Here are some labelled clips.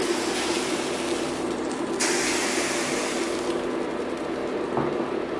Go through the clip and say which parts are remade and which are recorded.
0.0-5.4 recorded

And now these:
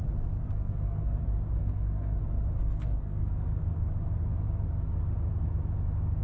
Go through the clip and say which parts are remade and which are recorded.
0.0-0.4 recorded; 0.4-1.2 remade; 1.2-1.6 recorded; 1.6-2.2 remade; 2.2-2.6 recorded; 2.6-3.9 remade; 3.9-6.2 recorded

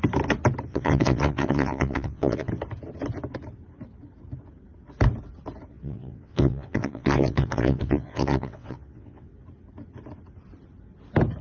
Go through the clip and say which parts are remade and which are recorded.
0.0-0.7 recorded; 0.7-2.5 remade; 2.5-5.7 recorded; 5.7-9.3 remade; 9.3-11.4 recorded

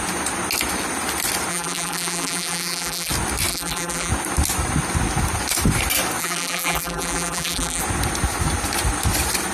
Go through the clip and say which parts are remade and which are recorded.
0.0-1.5 recorded; 1.5-3.1 remade; 3.1-3.5 recorded; 3.5-4.1 remade; 4.1-6.2 recorded; 6.2-7.8 remade; 7.8-9.5 recorded

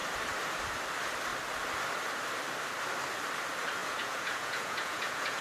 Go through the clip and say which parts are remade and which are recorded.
0.0-3.8 recorded; 3.8-5.4 remade